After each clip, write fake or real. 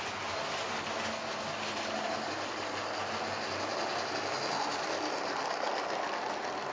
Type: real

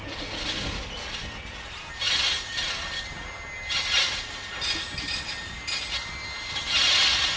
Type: real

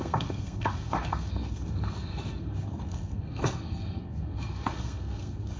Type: fake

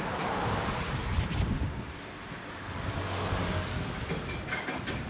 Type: real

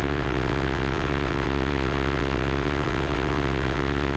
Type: fake